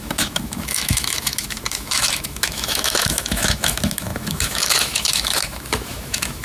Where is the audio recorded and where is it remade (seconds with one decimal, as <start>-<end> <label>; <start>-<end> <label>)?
0.0-6.4 remade